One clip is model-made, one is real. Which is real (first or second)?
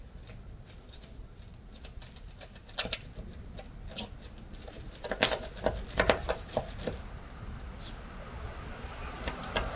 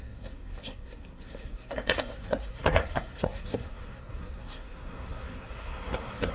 first